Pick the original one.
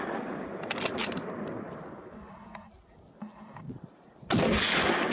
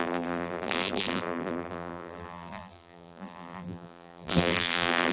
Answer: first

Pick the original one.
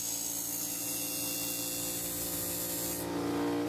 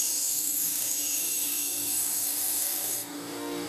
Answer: first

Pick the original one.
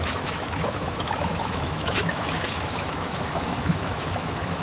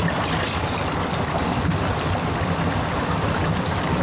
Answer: second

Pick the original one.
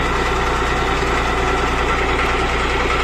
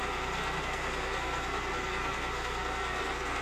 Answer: first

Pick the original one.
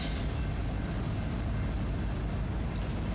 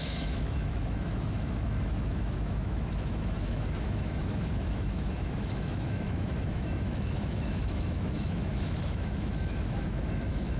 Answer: first